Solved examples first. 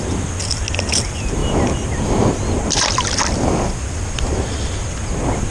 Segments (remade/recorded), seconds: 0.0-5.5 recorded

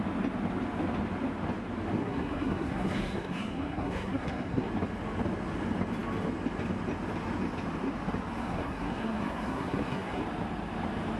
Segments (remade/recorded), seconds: 0.0-2.0 recorded; 2.0-4.7 remade; 4.7-8.4 recorded; 8.4-10.2 remade; 10.2-11.2 recorded

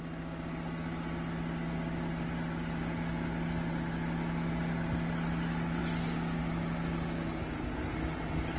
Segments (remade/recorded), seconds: 0.0-8.6 recorded

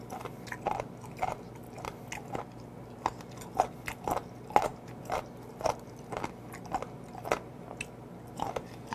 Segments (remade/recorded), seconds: 0.0-8.9 recorded

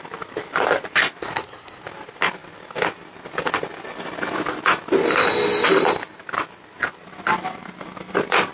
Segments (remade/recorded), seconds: 0.0-1.2 recorded; 1.2-1.8 remade; 1.8-8.5 recorded

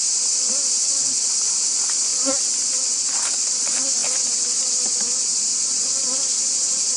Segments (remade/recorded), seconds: 0.0-7.0 recorded

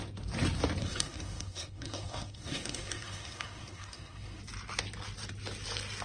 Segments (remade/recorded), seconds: 0.0-0.8 recorded; 0.8-4.4 remade; 4.4-6.0 recorded